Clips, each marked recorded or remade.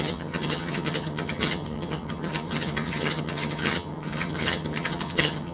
remade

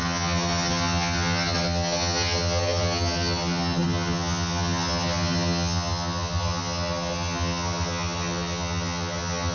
remade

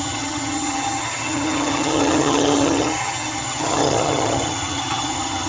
remade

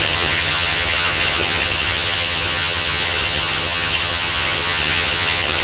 remade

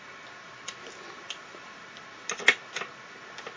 recorded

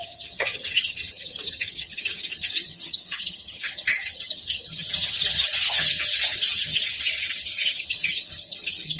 remade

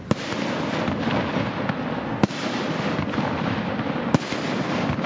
recorded